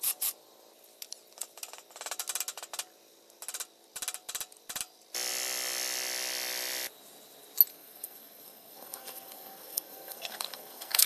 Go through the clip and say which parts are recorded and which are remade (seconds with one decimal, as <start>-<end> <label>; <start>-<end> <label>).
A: 0.0-7.7 recorded; 7.7-11.1 remade